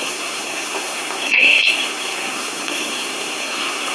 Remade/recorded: remade